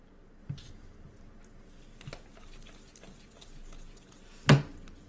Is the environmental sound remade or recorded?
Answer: recorded